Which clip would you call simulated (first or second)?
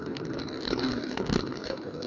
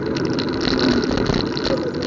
first